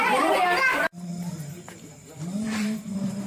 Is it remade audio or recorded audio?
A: remade